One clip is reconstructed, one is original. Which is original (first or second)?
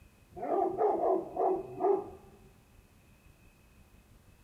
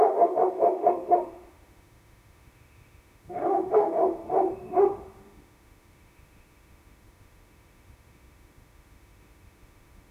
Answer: first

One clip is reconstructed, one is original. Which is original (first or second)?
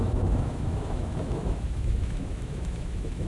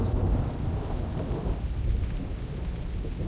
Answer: second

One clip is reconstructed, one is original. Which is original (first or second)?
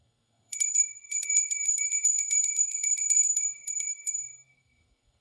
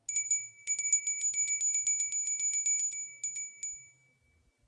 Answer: second